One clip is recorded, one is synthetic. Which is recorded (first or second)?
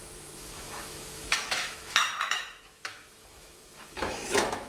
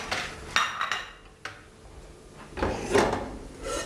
second